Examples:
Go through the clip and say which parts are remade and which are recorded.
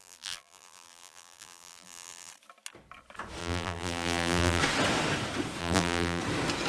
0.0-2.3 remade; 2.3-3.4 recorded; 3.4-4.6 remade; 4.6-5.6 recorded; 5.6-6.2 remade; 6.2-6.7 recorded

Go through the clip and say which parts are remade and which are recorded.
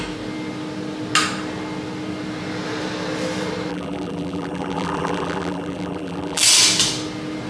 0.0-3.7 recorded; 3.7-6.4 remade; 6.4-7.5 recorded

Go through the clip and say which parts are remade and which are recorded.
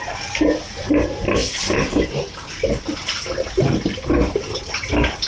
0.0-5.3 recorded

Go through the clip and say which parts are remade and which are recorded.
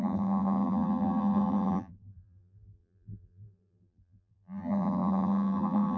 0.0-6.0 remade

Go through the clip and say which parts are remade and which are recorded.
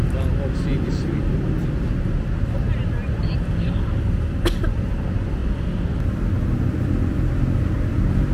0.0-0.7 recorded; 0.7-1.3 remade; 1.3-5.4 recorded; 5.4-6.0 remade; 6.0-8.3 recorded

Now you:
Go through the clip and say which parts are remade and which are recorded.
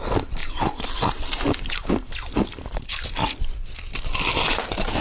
0.0-0.4 remade; 0.4-1.0 recorded; 1.0-5.0 remade